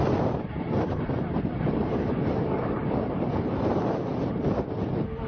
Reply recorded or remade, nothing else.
remade